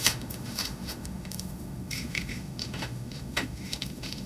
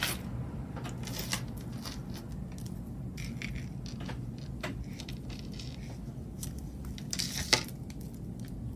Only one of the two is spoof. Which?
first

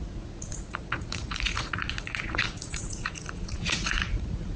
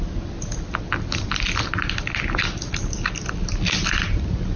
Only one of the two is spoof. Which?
first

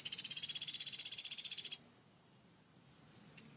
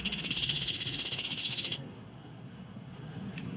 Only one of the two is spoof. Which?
second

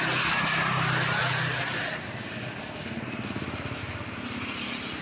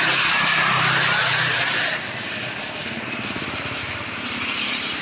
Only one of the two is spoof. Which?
second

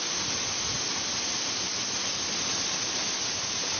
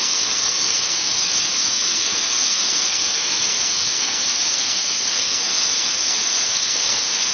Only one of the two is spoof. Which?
second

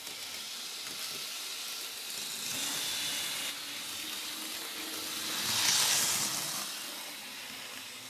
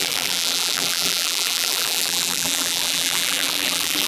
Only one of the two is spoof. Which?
second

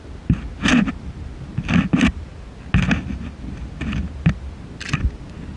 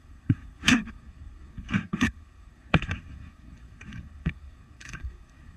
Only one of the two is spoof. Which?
second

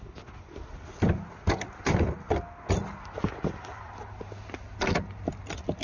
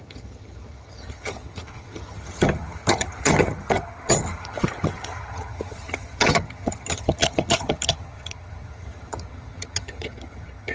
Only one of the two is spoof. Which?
second